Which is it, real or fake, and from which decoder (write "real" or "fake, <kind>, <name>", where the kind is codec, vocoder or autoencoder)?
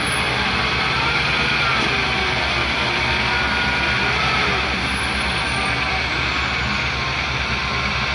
real